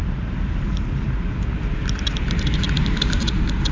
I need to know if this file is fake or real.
fake